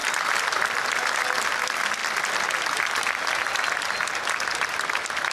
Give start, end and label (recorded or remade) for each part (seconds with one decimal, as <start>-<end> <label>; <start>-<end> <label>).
0.0-5.3 recorded